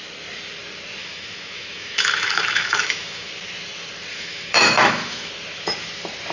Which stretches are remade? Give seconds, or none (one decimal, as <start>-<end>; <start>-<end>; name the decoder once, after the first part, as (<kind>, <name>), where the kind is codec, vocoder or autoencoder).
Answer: 1.0-3.3 (autoencoder, DAC-VAE); 4.1-5.3